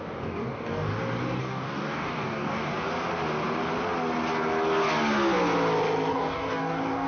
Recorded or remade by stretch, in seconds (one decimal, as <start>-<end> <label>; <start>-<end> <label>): 0.0-0.9 remade; 0.9-1.4 recorded; 1.4-2.7 remade; 2.7-6.1 recorded; 6.1-7.1 remade